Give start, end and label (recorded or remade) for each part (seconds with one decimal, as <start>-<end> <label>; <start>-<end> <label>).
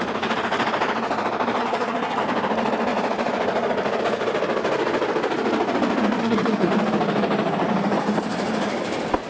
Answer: 0.0-1.6 recorded; 1.6-2.2 remade; 2.2-6.2 recorded; 6.2-6.7 remade; 6.7-9.3 recorded